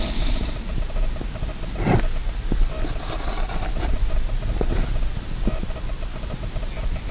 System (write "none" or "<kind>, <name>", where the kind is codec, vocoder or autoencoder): none